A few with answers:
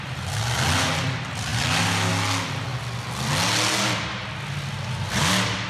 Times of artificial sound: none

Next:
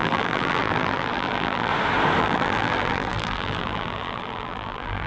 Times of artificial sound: 0.0-1.7 (vocoder, BigVGAN v2); 2.2-5.1

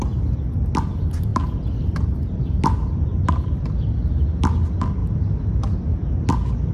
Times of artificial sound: 1.3-3.5 (vocoder, BigVGAN v2)

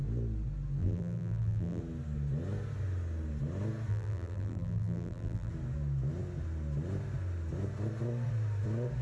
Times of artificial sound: 0.8-1.8 (vocoder, BigVGAN v2); 3.9-5.5

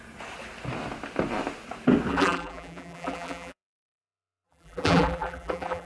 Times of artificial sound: 2.1-5.9 (vocoder, BigVGAN v2)

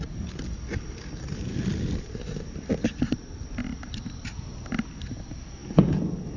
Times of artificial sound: none

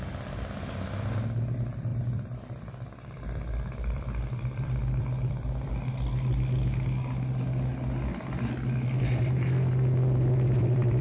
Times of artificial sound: 1.9-5.7 (vocoder, BigVGAN v2)